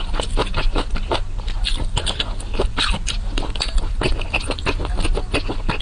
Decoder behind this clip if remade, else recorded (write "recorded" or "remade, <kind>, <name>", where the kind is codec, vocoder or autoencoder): remade, vocoder, BigVGAN v2